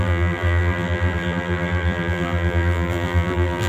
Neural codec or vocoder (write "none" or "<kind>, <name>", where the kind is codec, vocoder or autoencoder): vocoder, BigVGAN v2